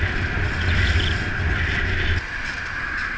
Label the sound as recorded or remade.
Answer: recorded